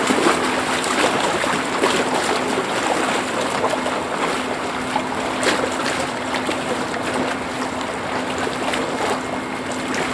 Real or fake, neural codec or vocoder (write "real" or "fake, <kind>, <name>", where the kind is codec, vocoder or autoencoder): real